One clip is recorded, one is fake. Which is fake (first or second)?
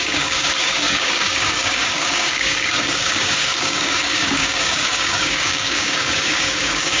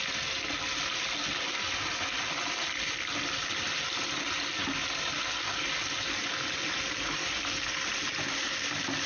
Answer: first